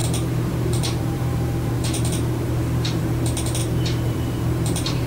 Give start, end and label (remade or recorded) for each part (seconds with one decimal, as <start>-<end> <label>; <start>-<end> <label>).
0.0-3.1 remade; 3.1-3.6 recorded; 3.6-5.1 remade